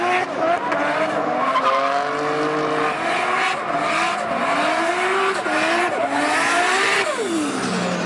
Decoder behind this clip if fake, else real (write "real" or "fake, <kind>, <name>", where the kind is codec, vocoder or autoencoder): real